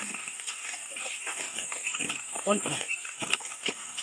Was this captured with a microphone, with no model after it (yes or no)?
no